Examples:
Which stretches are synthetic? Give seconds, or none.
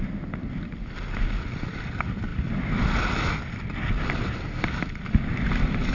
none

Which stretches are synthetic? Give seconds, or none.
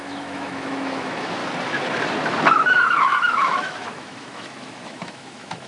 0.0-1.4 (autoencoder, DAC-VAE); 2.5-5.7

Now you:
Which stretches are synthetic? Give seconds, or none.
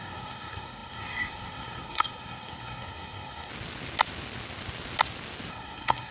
0.0-3.5 (codec, SNAC); 5.5-6.1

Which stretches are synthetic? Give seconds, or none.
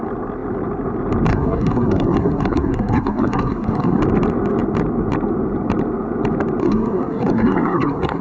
1.3-4.0 (codec, SNAC); 6.6-8.2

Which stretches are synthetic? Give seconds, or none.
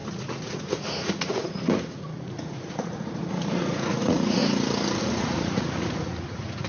0.0-4.4 (vocoder, Vocos); 5.0-6.7